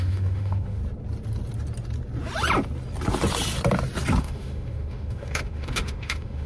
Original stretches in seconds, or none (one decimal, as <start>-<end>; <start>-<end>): 0.8-4.2